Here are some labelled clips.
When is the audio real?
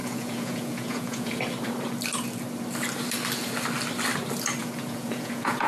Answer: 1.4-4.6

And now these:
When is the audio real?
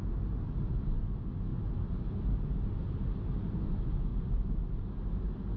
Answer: 0.0-5.6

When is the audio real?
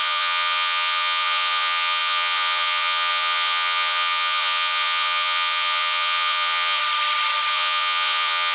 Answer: 6.8-7.5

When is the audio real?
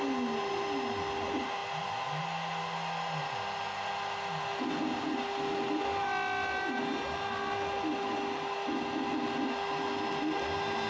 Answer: 0.0-10.9